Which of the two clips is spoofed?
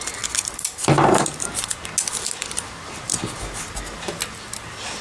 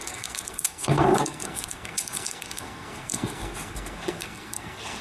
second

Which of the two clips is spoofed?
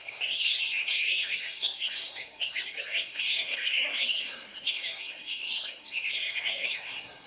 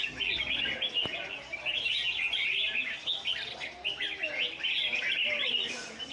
first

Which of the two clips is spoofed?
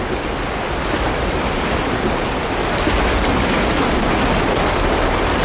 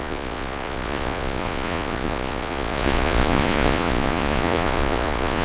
second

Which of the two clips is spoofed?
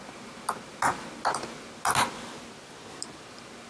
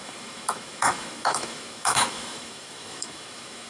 second